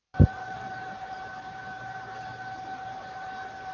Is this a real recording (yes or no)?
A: no